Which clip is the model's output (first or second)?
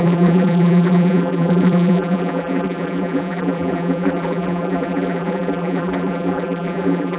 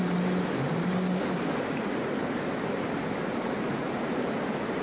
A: first